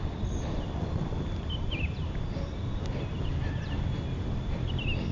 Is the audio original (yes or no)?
yes